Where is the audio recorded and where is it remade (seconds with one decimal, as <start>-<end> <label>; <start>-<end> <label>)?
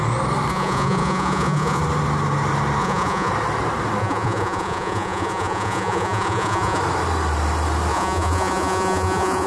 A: 0.0-0.5 recorded; 0.5-1.8 remade; 1.8-2.8 recorded; 2.8-3.3 remade; 3.3-4.0 recorded; 4.0-6.8 remade; 6.8-7.9 recorded; 7.9-9.5 remade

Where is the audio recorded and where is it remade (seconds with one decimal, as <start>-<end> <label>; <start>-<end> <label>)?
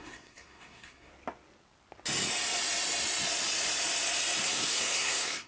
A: 0.0-1.1 remade; 1.1-4.4 recorded; 4.4-5.5 remade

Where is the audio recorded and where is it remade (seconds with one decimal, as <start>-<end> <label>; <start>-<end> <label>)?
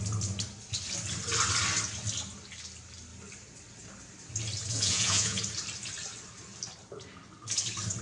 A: 0.0-4.7 recorded; 4.7-5.4 remade; 5.4-8.0 recorded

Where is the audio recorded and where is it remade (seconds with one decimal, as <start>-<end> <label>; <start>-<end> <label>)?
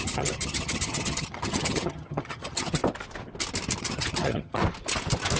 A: 0.0-2.8 remade; 2.8-3.8 recorded; 3.8-4.6 remade; 4.6-5.4 recorded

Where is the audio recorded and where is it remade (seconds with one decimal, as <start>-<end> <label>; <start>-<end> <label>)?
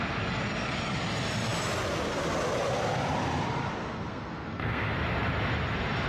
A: 0.0-3.8 recorded; 3.8-4.9 remade; 4.9-6.1 recorded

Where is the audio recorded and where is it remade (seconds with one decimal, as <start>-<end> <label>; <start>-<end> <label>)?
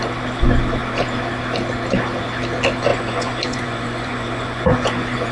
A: 0.0-2.9 recorded; 2.9-5.3 remade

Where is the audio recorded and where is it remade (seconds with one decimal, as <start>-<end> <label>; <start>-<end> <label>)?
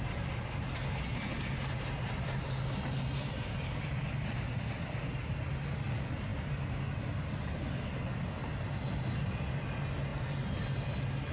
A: 0.0-11.3 recorded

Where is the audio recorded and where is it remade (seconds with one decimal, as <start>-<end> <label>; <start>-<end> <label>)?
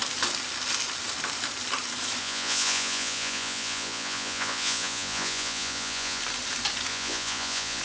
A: 0.0-2.2 recorded; 2.2-6.2 remade; 6.2-6.9 recorded; 6.9-7.8 remade